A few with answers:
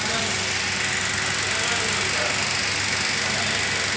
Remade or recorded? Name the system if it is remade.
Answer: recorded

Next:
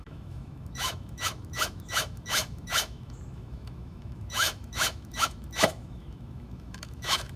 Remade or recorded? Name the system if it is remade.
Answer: remade, autoencoder, DAC-VAE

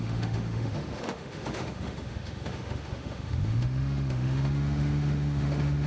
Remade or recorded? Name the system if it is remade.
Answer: remade, autoencoder, DAC-VAE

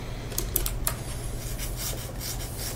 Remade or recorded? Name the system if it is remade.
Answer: recorded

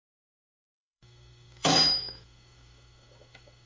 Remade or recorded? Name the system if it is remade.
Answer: remade, autoencoder, DAC-VAE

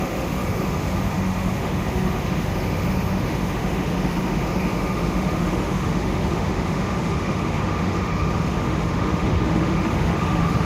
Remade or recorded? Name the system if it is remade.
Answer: remade, autoencoder, DAC-VAE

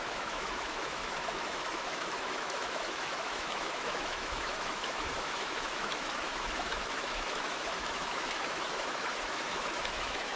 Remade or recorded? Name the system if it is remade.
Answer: remade, autoencoder, DAC-VAE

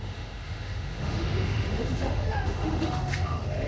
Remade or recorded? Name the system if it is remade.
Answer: remade, autoencoder, DAC-VAE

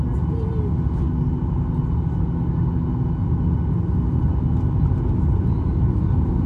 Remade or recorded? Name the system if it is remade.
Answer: recorded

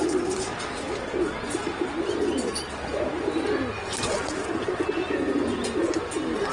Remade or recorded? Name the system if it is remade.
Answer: recorded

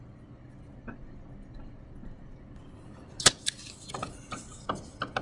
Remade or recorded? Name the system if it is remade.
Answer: recorded